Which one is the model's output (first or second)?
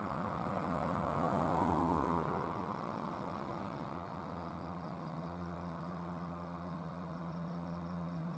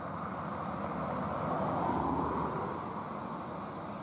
first